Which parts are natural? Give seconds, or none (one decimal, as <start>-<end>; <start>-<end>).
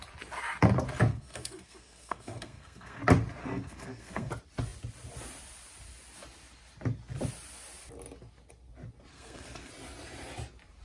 0.0-1.1; 3.0-3.4; 4.3-9.1; 9.7-10.8